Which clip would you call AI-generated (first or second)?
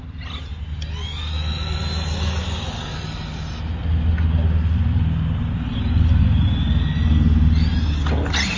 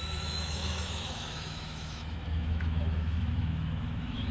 second